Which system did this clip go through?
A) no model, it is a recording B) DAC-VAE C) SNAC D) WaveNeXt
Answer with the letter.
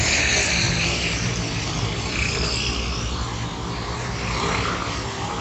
A